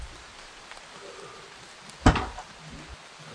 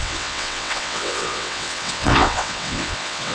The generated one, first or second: second